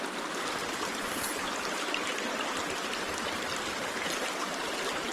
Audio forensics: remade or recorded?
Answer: recorded